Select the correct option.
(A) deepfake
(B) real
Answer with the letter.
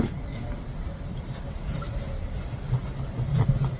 B